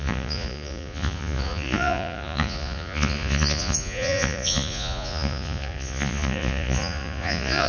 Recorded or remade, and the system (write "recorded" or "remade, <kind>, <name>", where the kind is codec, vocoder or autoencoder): remade, vocoder, Vocos